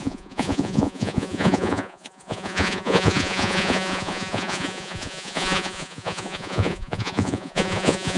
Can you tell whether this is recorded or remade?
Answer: remade